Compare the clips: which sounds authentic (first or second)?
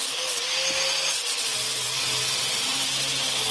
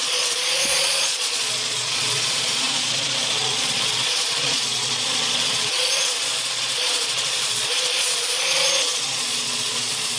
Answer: first